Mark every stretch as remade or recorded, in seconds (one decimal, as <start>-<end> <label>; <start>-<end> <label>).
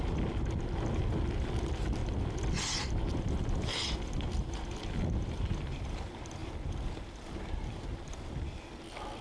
0.0-9.2 recorded